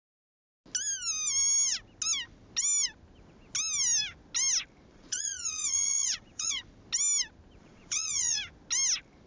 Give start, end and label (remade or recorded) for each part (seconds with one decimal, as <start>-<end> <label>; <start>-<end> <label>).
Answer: 0.0-4.9 recorded; 4.9-6.6 remade; 6.6-7.6 recorded; 7.6-8.4 remade; 8.4-9.3 recorded